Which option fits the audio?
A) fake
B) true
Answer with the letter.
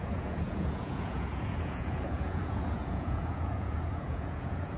A